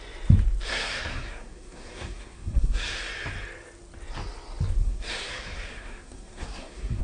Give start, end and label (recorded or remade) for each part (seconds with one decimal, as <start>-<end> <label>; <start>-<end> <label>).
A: 0.0-0.7 recorded; 0.7-3.0 remade; 3.0-4.8 recorded; 4.8-7.0 remade